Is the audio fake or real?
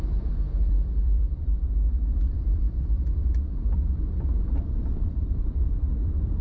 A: fake